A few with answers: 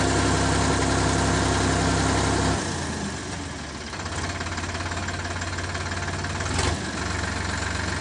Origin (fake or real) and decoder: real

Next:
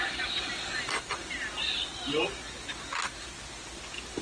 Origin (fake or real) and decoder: real